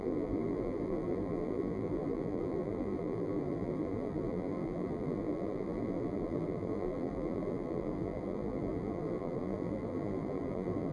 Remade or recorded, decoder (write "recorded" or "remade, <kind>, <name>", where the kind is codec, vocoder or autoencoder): remade, vocoder, BigVGAN v2